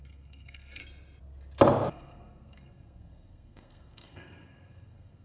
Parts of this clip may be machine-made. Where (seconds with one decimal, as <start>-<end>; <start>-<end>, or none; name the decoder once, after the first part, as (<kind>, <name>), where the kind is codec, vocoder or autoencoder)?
0.0-0.8 (codec, SNAC); 1.9-5.2